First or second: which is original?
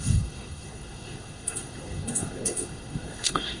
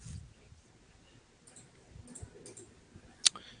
second